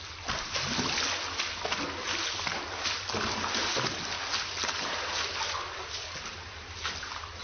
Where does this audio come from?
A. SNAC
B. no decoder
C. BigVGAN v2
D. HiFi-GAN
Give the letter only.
B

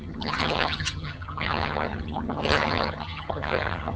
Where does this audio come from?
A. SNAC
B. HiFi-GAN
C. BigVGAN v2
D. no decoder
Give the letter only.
B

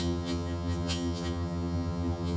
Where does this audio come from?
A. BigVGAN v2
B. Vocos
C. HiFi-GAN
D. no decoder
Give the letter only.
C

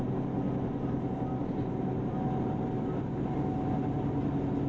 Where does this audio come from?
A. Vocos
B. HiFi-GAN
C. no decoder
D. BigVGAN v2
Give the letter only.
C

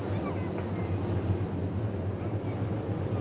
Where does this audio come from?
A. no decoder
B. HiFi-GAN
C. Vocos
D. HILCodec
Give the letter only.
A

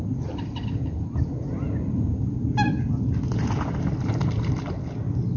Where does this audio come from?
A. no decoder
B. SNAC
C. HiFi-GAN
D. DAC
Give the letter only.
A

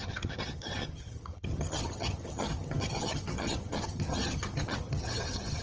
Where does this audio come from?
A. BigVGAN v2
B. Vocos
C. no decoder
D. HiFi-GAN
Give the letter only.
D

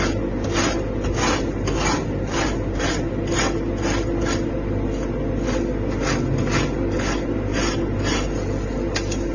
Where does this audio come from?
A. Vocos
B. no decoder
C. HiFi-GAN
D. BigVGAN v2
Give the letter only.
B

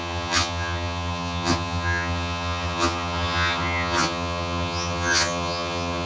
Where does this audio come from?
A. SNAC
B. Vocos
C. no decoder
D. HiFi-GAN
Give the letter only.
D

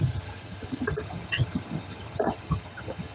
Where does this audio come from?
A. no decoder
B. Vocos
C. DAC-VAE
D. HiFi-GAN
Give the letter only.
D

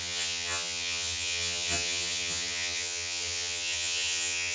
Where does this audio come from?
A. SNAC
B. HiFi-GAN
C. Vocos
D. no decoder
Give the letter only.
B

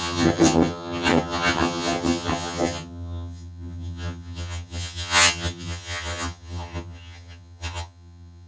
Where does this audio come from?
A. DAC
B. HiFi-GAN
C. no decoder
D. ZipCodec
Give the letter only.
B